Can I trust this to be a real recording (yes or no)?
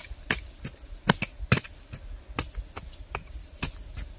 yes